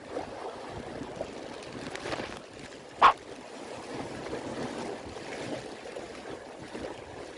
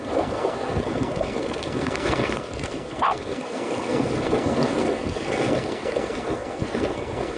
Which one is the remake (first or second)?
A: second